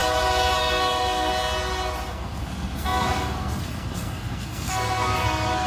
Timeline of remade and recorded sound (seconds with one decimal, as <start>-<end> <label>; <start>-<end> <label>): 0.0-0.6 recorded; 0.6-1.3 remade; 1.3-2.1 recorded; 2.1-5.7 remade